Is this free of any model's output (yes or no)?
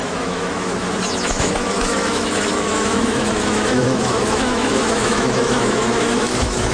no